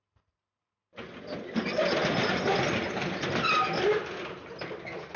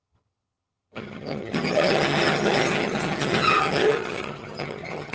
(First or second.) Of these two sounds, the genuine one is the first